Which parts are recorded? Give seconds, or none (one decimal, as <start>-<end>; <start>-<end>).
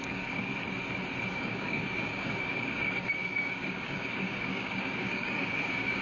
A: 0.5-1.3